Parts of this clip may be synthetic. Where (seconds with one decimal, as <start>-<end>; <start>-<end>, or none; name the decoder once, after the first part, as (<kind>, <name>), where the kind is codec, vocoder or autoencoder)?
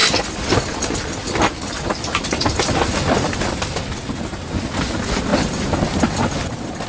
0.0-4.1 (vocoder, BigVGAN v2)